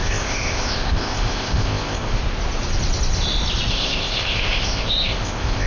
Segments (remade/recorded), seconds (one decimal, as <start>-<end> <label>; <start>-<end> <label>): 0.0-2.2 remade; 2.2-3.7 recorded; 3.7-5.7 remade